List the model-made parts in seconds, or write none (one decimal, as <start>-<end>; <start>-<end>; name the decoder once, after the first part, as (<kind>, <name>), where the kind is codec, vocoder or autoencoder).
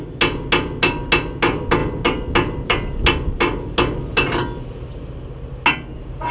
none